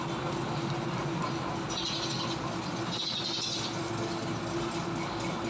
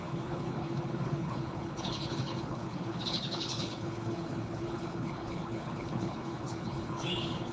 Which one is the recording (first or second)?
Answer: first